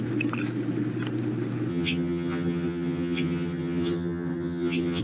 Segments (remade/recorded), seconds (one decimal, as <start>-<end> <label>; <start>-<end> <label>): 0.0-1.7 recorded; 1.7-5.0 remade